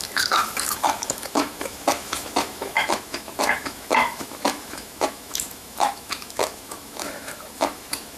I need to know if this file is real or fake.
fake